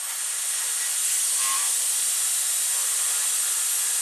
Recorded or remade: recorded